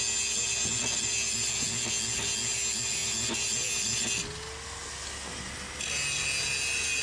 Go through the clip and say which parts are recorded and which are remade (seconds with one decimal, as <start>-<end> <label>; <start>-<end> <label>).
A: 0.0-7.0 recorded